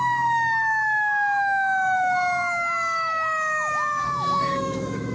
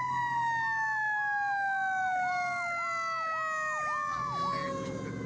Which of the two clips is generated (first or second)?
first